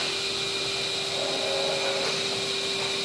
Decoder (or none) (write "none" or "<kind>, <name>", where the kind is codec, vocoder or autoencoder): none